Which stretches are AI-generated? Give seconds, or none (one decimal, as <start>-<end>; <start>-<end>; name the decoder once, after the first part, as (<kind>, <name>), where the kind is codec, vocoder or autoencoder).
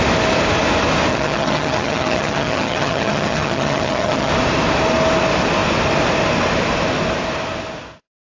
1.1-4.3 (vocoder, HiFi-GAN)